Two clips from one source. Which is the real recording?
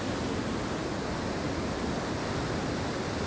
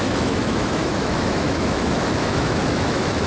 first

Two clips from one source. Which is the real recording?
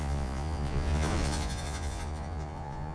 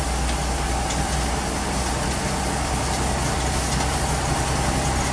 second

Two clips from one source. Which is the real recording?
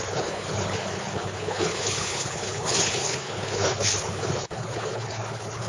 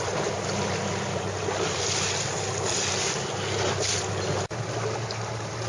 second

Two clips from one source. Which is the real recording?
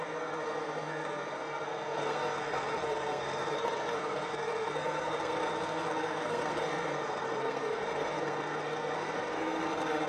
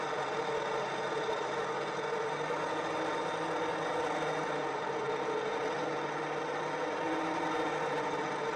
second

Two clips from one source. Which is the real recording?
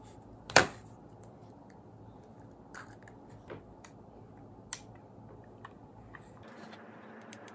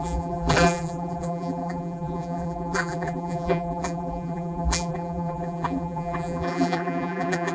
first